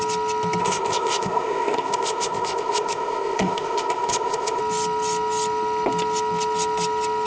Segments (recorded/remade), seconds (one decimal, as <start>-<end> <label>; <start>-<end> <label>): 0.0-0.6 recorded; 0.6-4.6 remade; 4.6-7.3 recorded